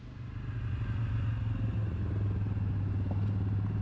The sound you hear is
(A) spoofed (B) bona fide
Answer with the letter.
B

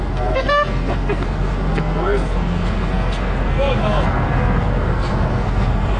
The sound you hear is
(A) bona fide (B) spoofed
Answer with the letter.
B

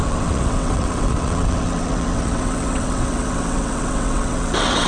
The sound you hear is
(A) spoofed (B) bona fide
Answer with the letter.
A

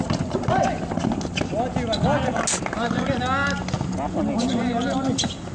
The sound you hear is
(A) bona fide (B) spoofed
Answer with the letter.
A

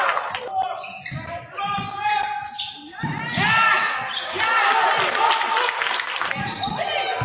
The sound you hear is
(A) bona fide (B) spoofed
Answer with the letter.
A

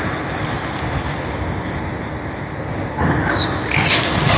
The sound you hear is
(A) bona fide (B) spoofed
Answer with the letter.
A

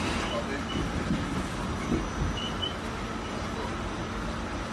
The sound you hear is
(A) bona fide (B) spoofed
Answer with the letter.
A